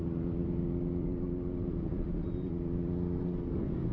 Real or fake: real